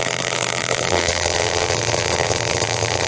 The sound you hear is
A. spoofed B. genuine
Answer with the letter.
A